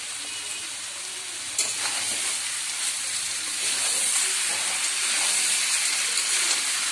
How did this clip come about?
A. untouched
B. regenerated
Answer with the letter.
A